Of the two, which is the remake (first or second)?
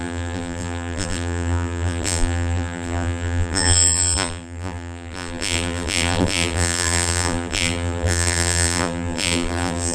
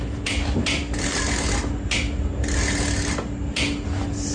first